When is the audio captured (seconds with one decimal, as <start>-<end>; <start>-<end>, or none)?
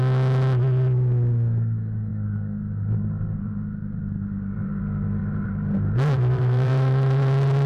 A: 0.0-5.2